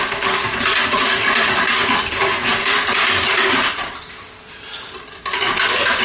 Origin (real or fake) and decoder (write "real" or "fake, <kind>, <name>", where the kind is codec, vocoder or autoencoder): real